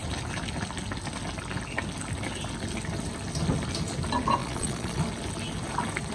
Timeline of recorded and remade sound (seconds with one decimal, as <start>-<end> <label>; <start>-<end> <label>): 0.0-4.4 recorded; 4.4-5.0 remade; 5.0-6.1 recorded